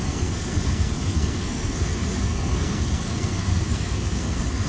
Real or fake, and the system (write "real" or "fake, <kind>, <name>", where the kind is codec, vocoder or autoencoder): fake, codec, SNAC